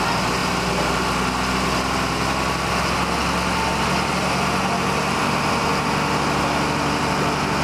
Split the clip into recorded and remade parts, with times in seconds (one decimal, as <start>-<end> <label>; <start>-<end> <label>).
0.0-7.6 recorded